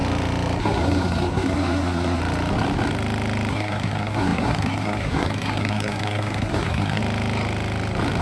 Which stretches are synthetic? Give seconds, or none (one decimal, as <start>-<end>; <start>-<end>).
0.6-2.2; 3.5-7.0